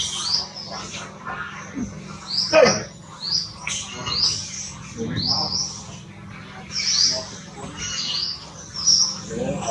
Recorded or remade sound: recorded